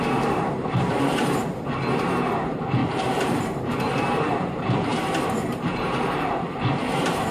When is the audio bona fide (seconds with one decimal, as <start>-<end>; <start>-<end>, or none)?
none